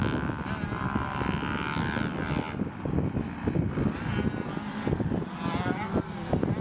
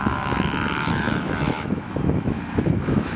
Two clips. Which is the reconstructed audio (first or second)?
second